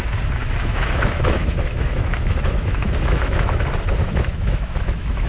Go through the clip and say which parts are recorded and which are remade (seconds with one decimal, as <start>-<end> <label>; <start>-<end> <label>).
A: 0.0-0.4 recorded; 0.4-3.6 remade; 3.6-4.0 recorded; 4.0-5.3 remade